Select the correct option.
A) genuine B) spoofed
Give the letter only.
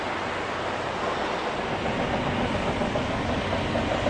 A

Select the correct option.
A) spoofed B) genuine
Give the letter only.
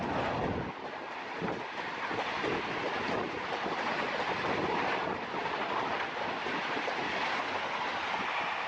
B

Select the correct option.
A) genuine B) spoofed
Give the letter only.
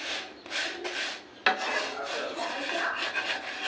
A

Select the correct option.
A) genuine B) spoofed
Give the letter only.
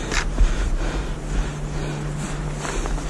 A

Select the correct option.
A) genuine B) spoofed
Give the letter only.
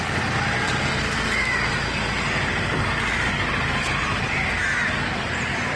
A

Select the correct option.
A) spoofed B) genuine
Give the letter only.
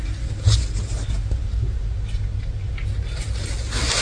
B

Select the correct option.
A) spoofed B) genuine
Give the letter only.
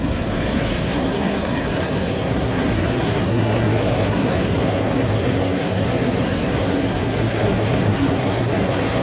A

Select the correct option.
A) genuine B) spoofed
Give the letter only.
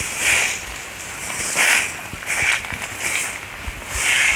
A